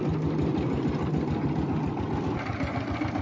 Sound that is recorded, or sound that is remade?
recorded